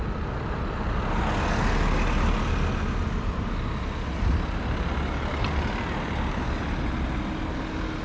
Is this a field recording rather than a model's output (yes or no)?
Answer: yes